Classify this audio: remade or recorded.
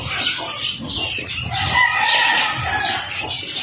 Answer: recorded